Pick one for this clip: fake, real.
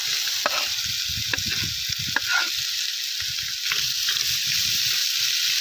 real